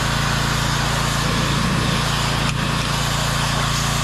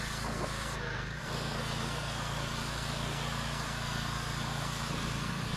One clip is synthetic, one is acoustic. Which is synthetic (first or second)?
second